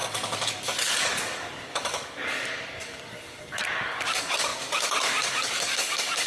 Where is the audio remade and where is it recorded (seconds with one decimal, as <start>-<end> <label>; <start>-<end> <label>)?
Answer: 0.0-6.3 remade